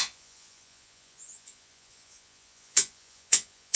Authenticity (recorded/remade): remade